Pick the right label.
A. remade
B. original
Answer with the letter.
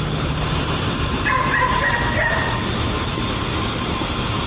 B